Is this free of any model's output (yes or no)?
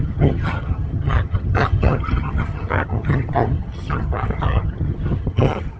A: no